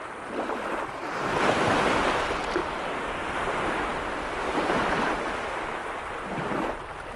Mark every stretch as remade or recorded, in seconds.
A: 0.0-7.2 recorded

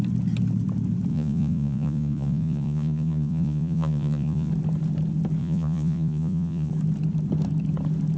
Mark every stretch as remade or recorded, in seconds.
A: 0.0-1.1 recorded; 1.1-4.5 remade; 4.5-5.4 recorded; 5.4-6.7 remade; 6.7-8.2 recorded

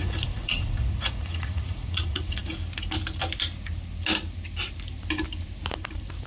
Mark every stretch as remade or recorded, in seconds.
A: 0.0-2.6 remade; 2.6-6.3 recorded

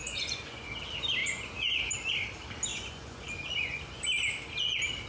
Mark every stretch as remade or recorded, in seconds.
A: 0.0-0.7 remade; 0.7-1.2 recorded; 1.2-1.9 remade; 1.9-2.7 recorded; 2.7-4.0 remade; 4.0-5.1 recorded